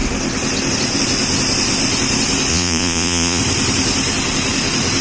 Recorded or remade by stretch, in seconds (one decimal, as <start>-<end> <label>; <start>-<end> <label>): 0.0-2.5 recorded; 2.5-3.4 remade; 3.4-5.0 recorded